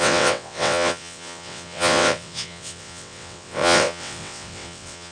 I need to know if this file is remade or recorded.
remade